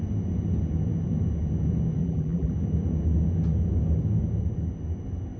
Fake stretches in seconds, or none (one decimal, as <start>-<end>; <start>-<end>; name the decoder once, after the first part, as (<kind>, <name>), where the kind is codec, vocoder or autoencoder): 2.0-2.5 (vocoder, BigVGAN v2)